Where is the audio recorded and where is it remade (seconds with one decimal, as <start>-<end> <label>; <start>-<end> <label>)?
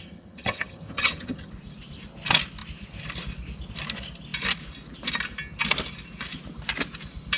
0.0-1.5 remade; 1.5-7.4 recorded